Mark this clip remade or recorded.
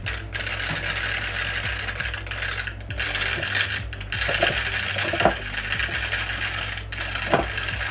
recorded